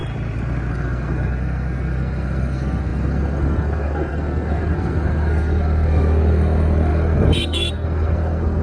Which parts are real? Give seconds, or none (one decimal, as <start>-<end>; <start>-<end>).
0.0-0.7